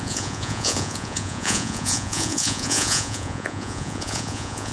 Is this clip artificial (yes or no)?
yes